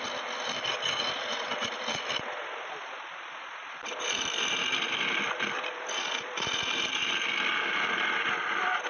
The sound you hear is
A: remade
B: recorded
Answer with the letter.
B